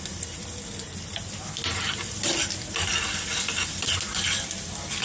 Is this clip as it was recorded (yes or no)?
yes